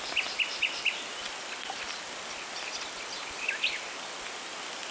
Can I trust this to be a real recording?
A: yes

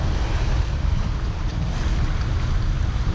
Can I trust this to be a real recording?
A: yes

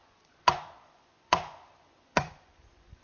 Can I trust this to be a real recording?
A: no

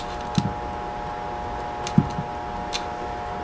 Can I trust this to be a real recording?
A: yes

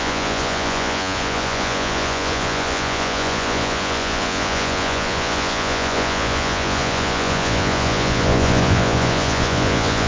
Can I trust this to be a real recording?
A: no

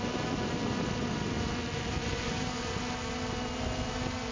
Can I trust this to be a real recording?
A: yes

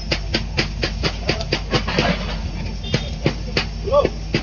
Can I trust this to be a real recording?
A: yes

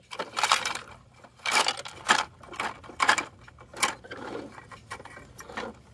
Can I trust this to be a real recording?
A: yes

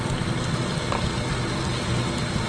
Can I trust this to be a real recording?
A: yes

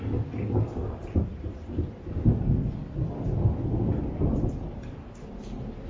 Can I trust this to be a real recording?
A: yes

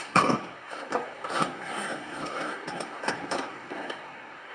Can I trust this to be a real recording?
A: no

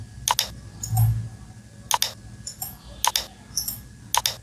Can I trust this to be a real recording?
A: yes